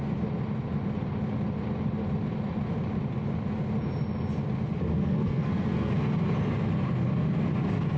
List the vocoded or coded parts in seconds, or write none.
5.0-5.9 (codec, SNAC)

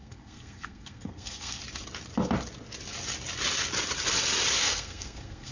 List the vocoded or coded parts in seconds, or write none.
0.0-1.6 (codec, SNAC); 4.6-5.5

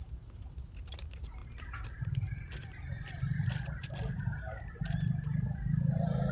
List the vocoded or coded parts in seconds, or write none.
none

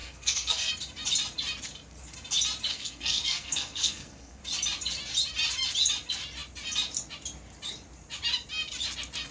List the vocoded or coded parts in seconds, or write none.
0.0-0.7 (codec, SNAC); 2.7-4.4